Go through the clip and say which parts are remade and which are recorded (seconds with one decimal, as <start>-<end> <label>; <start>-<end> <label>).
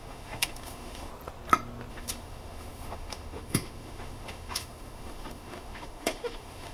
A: 0.0-1.1 remade; 1.1-1.9 recorded; 1.9-6.7 remade